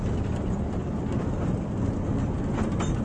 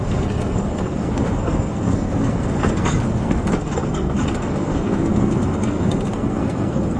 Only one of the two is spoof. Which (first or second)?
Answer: second